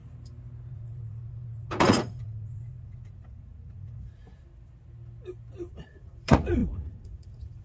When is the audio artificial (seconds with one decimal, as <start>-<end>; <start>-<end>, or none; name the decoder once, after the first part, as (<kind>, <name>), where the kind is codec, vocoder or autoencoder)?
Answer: 0.7-4.2 (vocoder, Vocos); 5.7-7.6